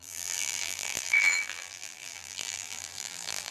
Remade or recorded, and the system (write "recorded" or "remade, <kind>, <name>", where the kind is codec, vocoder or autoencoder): remade, vocoder, BigVGAN v2